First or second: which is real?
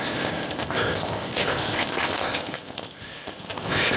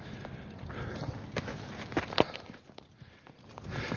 second